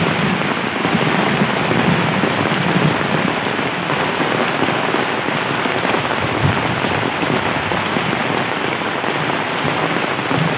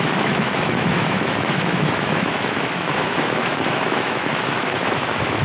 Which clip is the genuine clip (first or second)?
first